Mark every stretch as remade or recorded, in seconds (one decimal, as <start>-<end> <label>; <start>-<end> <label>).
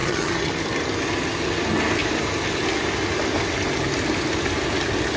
0.0-0.5 remade; 0.5-5.2 recorded